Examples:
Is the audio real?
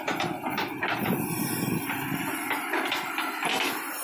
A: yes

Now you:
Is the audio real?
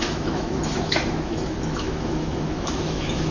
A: no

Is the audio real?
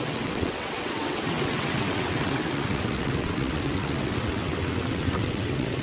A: no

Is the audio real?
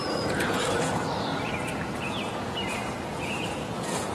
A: no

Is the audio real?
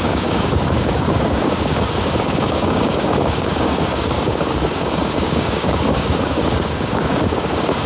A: no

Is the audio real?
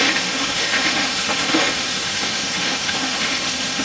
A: no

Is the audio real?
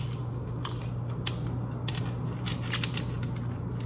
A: yes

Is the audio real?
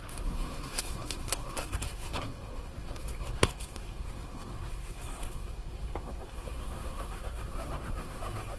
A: no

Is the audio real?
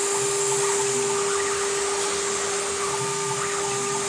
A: yes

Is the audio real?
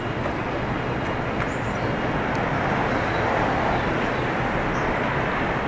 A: yes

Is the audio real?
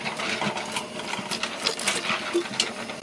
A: yes